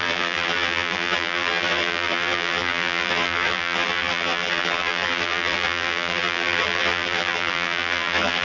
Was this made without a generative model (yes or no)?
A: no